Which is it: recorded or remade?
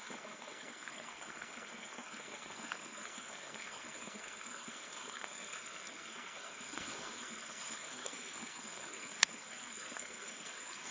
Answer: remade